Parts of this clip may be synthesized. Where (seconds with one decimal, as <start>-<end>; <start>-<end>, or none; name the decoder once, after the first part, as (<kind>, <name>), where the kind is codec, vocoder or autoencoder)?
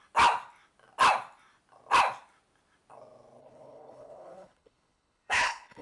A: 3.4-5.8 (codec, HILCodec)